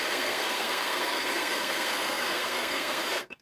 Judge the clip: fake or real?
fake